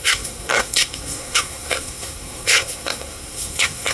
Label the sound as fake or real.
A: fake